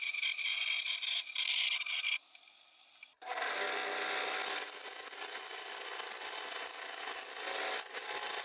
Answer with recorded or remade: recorded